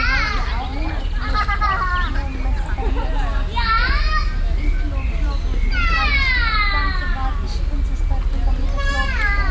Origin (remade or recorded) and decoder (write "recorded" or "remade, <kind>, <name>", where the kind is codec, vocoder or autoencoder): recorded